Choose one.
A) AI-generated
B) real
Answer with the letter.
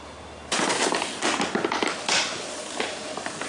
B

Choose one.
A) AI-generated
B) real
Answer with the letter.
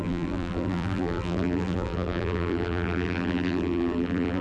A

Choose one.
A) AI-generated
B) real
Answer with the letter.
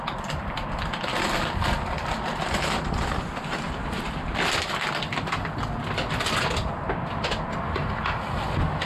B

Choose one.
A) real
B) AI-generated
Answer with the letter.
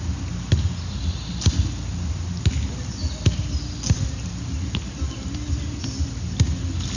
A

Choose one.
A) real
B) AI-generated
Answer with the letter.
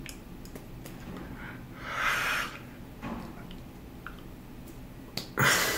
A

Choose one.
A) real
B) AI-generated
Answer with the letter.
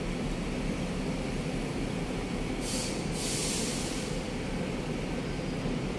B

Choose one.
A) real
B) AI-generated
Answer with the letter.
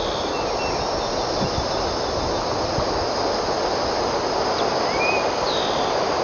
A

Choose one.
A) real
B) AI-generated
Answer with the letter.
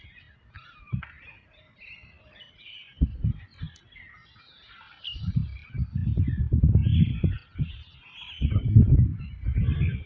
A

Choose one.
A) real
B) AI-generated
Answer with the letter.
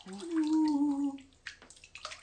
B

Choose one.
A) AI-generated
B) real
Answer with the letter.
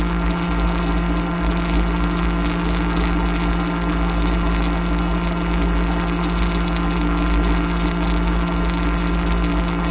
A